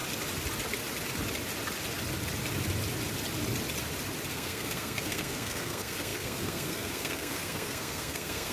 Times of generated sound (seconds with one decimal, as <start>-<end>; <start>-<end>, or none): 4.3-8.5